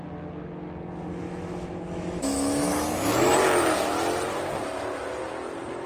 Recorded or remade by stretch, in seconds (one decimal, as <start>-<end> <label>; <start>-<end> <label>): 0.0-1.1 recorded; 1.1-3.3 remade; 3.3-5.9 recorded